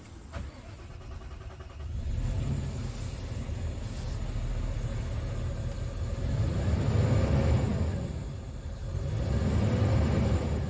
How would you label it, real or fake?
real